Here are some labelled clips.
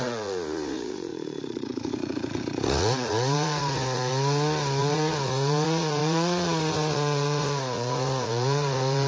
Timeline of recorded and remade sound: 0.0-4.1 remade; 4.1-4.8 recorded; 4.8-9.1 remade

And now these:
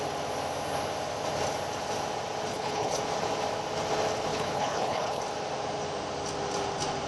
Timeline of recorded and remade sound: 0.0-2.5 recorded; 2.5-3.0 remade; 3.0-4.3 recorded; 4.3-5.2 remade; 5.2-7.1 recorded

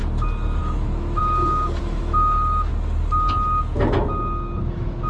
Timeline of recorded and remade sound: 0.0-0.6 recorded; 0.6-1.2 remade; 1.2-1.8 recorded; 1.8-2.7 remade; 2.7-4.6 recorded; 4.6-5.1 remade